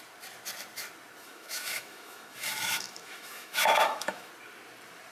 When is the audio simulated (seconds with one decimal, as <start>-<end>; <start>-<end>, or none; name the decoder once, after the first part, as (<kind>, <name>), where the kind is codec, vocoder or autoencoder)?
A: 1.2-4.3 (autoencoder, DAC-VAE)